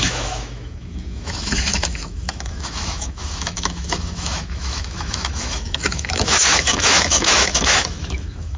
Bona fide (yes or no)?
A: no